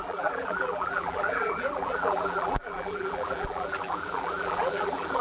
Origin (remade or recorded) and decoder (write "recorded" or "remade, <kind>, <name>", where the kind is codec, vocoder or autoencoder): remade, vocoder, BigVGAN v2